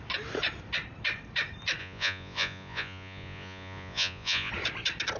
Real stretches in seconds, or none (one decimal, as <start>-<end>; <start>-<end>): 0.0-1.8; 4.5-5.2